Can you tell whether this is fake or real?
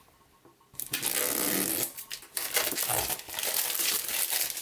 real